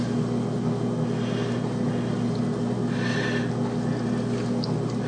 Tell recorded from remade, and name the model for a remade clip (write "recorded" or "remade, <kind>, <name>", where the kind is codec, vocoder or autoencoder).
recorded